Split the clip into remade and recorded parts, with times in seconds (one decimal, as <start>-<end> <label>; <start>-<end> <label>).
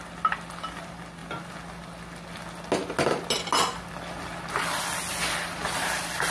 0.0-6.3 recorded